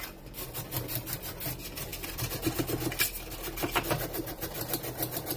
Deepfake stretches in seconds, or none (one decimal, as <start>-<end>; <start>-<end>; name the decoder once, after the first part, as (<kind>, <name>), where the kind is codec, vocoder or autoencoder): none